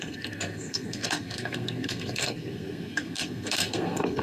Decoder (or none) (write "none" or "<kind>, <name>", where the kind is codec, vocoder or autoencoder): codec, SNAC